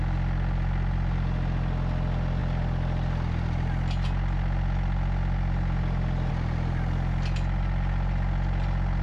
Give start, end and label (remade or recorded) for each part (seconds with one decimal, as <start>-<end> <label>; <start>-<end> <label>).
0.0-9.0 recorded